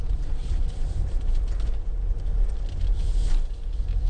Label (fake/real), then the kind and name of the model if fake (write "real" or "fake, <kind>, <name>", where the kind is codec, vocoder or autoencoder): real